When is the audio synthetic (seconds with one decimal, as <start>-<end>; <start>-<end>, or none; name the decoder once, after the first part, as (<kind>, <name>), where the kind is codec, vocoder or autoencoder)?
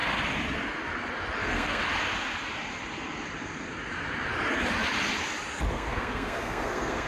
1.4-1.8 (codec, SNAC); 5.7-7.1